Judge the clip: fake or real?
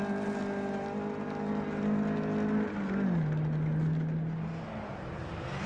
real